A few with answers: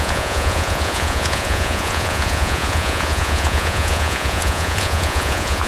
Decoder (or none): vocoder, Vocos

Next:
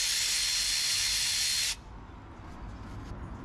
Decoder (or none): none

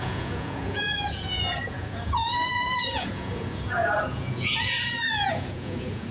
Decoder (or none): vocoder, Vocos